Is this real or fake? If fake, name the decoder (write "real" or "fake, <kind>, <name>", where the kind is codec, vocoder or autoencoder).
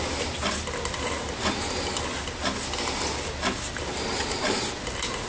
real